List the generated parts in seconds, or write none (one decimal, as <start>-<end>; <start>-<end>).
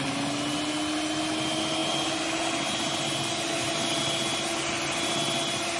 none